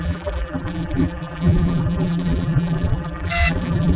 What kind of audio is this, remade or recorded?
remade